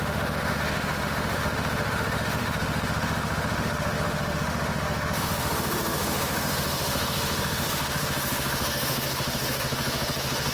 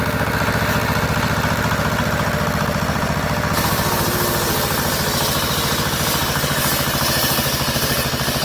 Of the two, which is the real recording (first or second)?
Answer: second